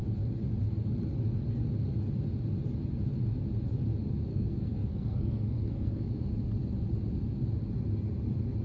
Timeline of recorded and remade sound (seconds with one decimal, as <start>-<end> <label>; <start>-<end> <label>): 0.0-4.3 recorded; 4.3-6.1 remade; 6.1-8.6 recorded